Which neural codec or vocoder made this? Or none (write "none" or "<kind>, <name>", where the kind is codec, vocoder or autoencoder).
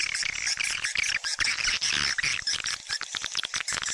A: none